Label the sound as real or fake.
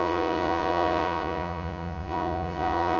fake